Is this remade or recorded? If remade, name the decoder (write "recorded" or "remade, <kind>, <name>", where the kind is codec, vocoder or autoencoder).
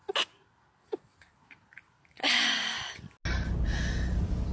recorded